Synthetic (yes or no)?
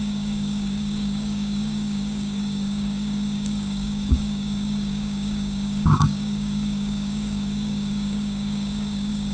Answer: yes